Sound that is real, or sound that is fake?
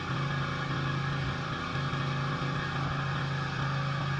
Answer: real